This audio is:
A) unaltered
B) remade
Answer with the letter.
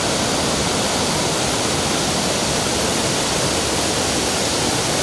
A